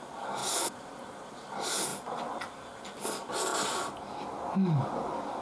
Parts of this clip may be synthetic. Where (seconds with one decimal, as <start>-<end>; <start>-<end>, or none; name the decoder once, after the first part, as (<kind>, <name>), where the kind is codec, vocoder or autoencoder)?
0.4-1.3 (vocoder, BigVGAN v2)